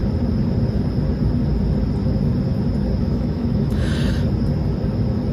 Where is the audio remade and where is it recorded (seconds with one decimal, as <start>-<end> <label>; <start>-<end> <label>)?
0.0-3.0 recorded; 3.0-3.9 remade; 3.9-5.3 recorded